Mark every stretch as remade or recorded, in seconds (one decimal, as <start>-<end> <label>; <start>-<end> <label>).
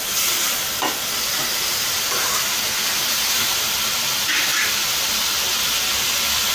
0.0-6.5 recorded